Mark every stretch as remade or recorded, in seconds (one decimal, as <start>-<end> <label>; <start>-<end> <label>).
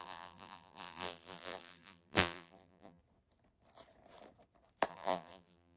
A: 0.0-3.0 remade; 3.0-4.9 recorded; 4.9-5.8 remade